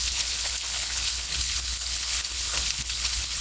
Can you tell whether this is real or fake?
fake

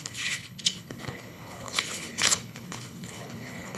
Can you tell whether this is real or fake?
fake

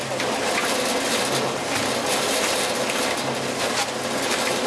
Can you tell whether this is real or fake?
real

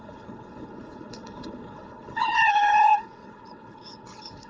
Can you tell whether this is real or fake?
fake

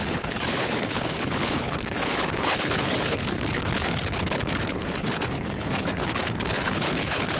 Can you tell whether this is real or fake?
fake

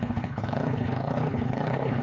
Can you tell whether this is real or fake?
fake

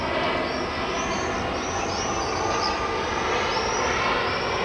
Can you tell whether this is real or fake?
real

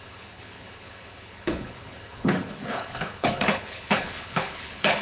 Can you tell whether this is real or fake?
fake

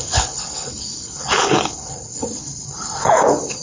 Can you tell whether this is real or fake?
fake